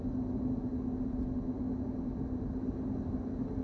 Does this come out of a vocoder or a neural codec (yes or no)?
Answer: no